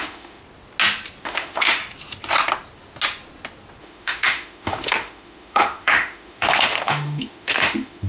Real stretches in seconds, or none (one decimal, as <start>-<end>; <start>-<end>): 0.4-1.2; 1.8-3.8